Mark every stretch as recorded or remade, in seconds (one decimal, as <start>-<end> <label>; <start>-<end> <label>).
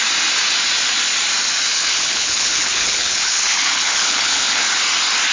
0.0-1.7 recorded; 1.7-4.6 remade; 4.6-5.3 recorded